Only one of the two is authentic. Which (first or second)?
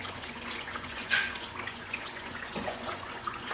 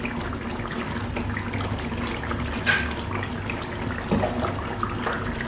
second